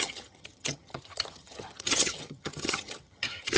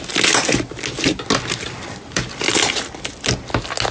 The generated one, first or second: first